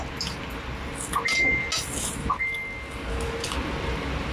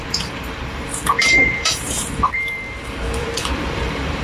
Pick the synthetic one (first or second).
second